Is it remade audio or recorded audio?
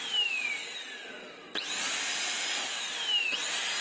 recorded